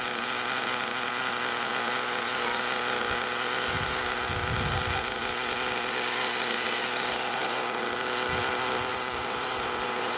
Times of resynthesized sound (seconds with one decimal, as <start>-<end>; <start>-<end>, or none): 8.9-10.2